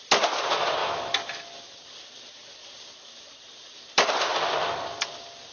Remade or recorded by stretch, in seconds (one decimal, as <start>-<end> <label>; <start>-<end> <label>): 0.0-5.5 recorded